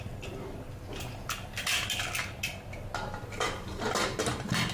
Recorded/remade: recorded